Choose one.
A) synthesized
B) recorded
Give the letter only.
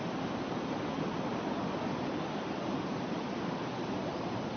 B